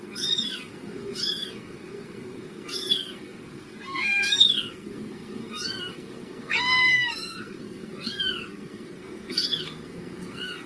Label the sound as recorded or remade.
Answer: remade